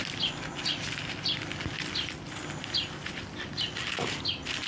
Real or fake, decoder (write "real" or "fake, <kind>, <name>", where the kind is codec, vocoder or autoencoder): real